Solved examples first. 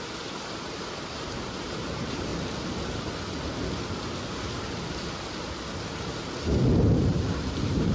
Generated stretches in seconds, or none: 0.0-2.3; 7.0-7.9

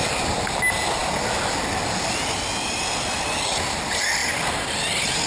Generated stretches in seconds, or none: none

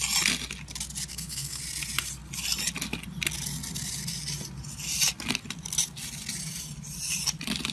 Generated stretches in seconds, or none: 1.1-1.6

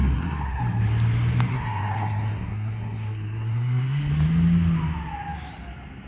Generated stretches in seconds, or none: 0.0-0.6; 1.5-4.1

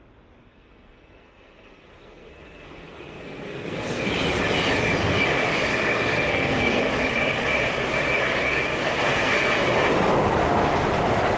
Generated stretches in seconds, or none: 0.4-4.1; 5.7-6.8; 8.4-9.6

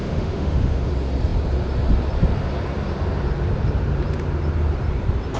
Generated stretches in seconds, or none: 0.0-0.9